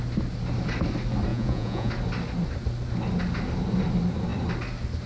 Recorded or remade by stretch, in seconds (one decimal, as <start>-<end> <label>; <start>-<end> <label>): 0.0-1.3 recorded; 1.3-1.9 remade; 1.9-5.1 recorded